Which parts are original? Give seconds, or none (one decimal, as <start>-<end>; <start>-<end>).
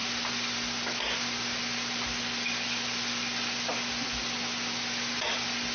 0.0-5.7